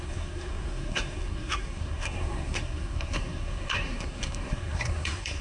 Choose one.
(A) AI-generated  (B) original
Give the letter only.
A